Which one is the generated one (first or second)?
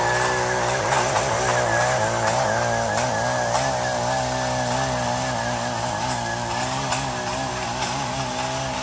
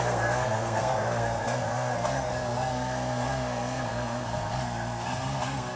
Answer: second